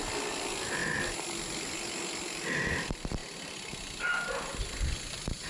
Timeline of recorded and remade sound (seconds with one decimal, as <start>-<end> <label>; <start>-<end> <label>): 0.0-5.5 recorded